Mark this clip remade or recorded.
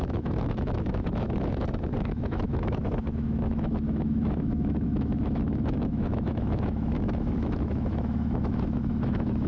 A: remade